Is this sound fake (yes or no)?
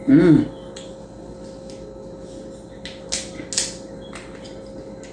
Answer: no